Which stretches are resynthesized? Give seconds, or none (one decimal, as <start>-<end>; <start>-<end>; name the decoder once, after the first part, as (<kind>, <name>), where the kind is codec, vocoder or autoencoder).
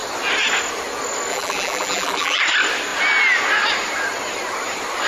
1.3-2.4 (vocoder, BigVGAN v2)